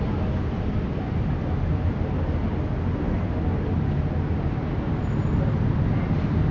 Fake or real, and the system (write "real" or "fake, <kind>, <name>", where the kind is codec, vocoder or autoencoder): real